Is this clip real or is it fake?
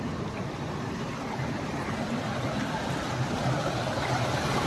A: real